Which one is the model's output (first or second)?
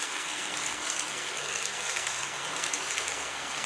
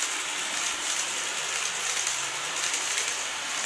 first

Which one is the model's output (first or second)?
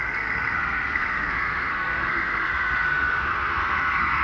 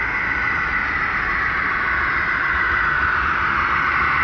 first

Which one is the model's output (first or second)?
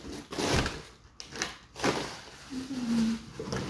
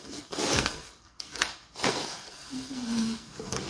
second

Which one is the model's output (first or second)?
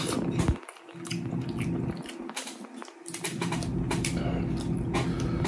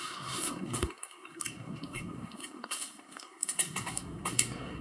second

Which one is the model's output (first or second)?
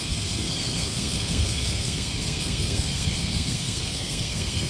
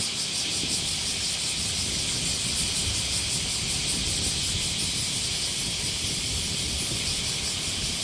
first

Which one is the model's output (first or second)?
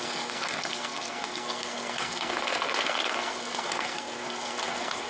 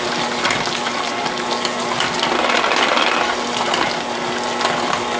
first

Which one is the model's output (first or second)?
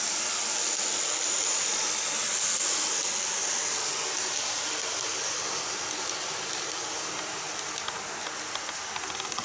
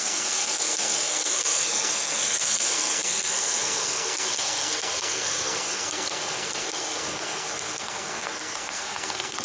second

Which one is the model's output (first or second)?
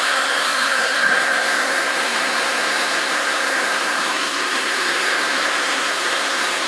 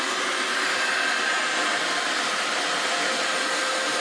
first